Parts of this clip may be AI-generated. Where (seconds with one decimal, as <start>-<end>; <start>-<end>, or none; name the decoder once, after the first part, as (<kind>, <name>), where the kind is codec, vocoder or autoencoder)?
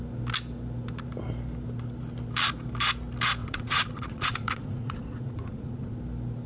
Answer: 3.4-6.0 (vocoder, Vocos)